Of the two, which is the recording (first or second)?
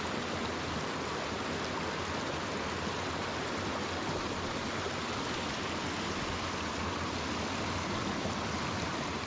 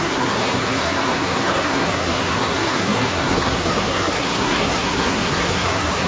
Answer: first